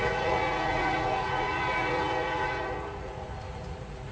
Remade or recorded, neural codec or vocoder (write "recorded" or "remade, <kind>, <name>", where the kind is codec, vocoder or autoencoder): remade, vocoder, Vocos